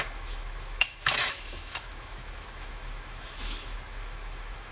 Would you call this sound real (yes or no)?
no